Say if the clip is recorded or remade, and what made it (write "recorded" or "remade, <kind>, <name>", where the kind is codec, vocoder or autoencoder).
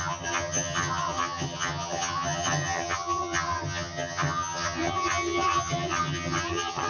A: remade, vocoder, HiFi-GAN